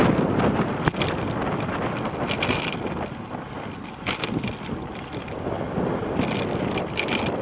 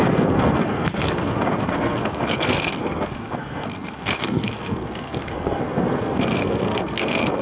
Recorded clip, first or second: first